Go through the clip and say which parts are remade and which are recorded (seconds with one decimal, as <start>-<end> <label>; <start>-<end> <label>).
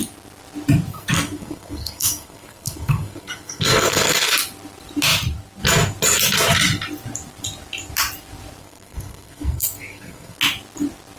0.0-0.9 recorded; 0.9-4.3 remade; 4.3-8.6 recorded; 8.6-10.4 remade; 10.4-11.2 recorded